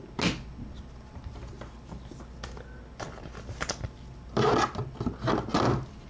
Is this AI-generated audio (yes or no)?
no